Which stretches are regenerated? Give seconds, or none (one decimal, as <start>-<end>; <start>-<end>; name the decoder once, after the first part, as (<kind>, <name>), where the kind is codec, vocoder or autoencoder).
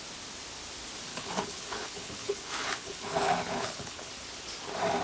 1.1-4.1 (codec, HILCodec)